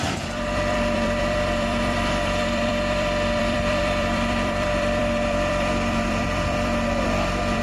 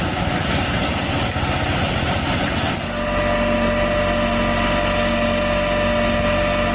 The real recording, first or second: second